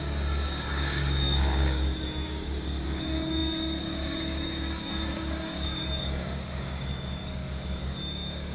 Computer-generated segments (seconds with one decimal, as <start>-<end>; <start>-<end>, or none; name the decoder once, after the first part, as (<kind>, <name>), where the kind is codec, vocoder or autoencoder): 0.0-8.5 (codec, DAC)